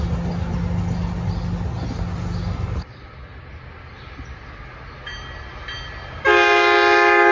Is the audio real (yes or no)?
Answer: yes